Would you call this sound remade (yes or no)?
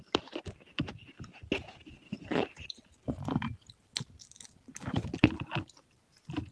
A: no